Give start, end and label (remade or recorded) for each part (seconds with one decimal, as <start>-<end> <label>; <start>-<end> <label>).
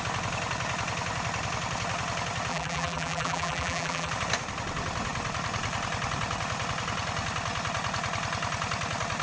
0.0-2.5 recorded; 2.5-4.1 remade; 4.1-9.2 recorded